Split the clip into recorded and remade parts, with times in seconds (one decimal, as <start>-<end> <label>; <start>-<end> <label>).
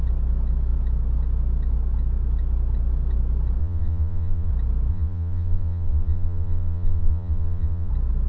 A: 0.0-3.6 recorded; 3.6-4.5 remade; 4.5-4.9 recorded; 4.9-7.9 remade; 7.9-8.3 recorded